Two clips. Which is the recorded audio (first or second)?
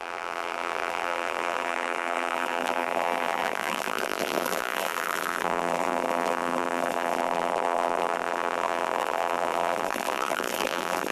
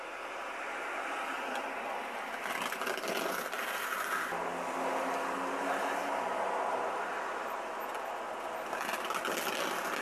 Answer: second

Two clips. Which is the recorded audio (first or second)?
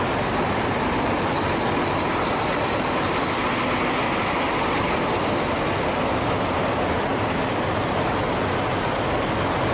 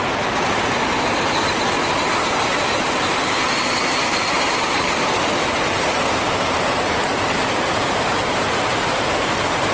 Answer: first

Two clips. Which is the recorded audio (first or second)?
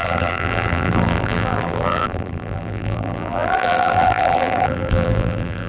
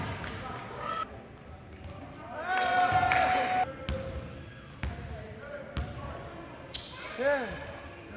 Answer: second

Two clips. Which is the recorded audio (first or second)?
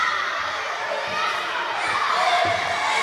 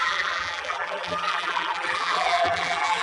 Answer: first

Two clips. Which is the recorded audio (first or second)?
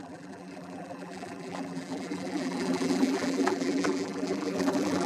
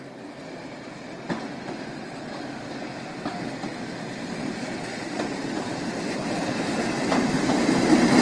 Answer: second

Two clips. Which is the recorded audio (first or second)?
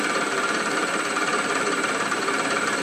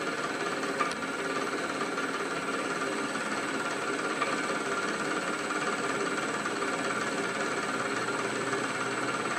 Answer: second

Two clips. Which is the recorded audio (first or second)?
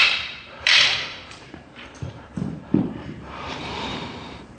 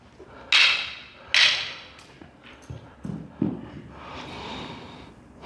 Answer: second